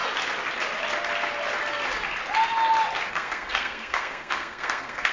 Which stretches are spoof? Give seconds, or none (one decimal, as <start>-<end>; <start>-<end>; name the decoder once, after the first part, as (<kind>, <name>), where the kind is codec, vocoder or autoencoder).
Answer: 3.1-5.1 (codec, SNAC)